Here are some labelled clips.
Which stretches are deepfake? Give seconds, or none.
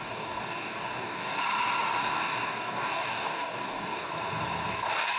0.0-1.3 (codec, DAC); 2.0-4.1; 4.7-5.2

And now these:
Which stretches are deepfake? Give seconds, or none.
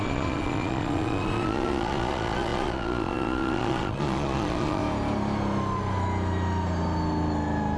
0.0-4.8 (vocoder, Vocos)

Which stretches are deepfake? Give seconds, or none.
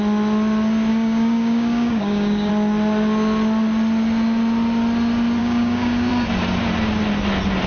0.9-2.5 (codec, DAC); 5.4-6.1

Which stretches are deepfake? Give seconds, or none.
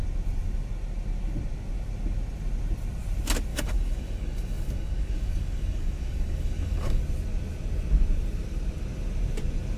3.5-7.0 (codec, DAC)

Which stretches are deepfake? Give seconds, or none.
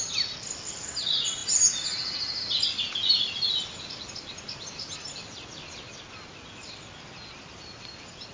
none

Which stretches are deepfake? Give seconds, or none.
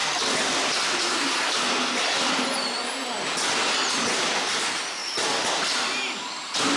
none